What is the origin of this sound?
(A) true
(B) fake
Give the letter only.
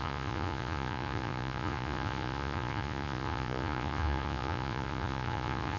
B